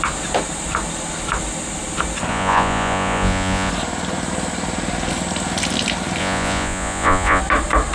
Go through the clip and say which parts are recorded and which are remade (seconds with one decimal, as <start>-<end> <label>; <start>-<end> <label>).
0.0-2.3 recorded; 2.3-3.7 remade; 3.7-6.2 recorded; 6.2-7.4 remade; 7.4-7.9 recorded